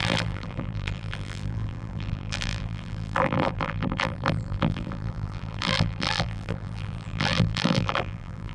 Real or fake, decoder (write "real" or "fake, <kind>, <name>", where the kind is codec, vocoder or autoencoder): fake, vocoder, BigVGAN v2